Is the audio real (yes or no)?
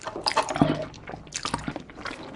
yes